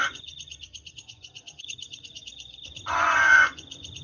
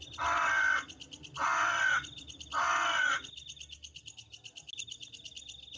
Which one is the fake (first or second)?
first